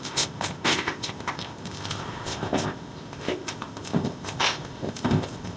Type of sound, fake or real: fake